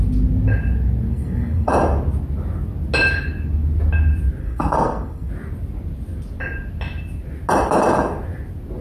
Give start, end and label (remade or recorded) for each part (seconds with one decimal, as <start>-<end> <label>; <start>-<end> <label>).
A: 0.0-1.1 recorded; 1.1-1.7 remade; 1.7-4.4 recorded; 4.4-5.3 remade; 5.3-8.8 recorded